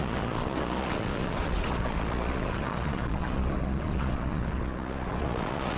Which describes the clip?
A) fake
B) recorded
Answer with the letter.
A